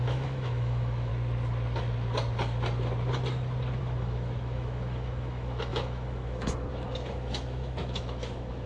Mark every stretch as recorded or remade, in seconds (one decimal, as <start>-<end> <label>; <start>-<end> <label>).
0.0-1.1 remade; 1.1-3.8 recorded; 3.8-8.7 remade